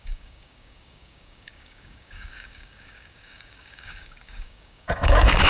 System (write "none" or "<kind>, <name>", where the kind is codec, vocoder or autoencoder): codec, DAC